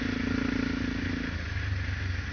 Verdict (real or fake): real